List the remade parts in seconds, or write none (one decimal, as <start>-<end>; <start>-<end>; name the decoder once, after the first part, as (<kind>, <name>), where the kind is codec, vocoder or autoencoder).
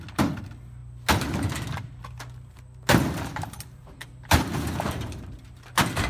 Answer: 3.3-5.3 (vocoder, BigVGAN v2)